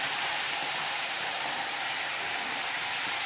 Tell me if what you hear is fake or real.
fake